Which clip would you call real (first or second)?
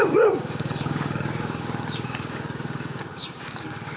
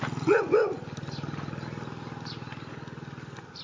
second